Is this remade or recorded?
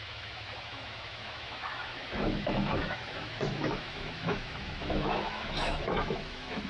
remade